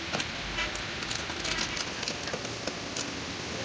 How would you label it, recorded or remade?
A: recorded